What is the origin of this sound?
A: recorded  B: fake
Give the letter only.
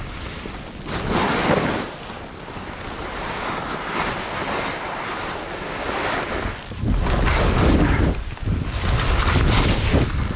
A